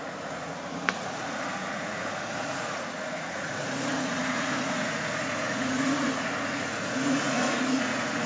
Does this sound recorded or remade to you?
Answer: remade